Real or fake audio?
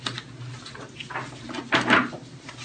real